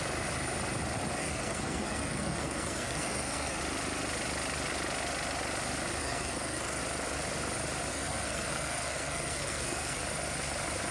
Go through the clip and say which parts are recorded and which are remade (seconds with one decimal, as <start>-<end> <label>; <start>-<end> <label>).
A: 0.0-1.2 recorded; 1.2-3.6 remade; 3.6-6.0 recorded; 6.0-6.8 remade; 6.8-7.9 recorded; 7.9-10.0 remade; 10.0-10.9 recorded